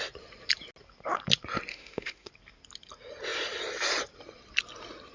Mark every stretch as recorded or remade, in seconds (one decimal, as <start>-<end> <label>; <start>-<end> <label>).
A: 0.0-1.7 recorded; 1.7-2.3 remade; 2.3-5.1 recorded